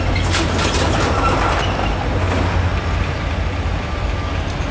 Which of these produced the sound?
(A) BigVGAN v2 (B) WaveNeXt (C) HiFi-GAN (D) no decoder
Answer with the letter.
D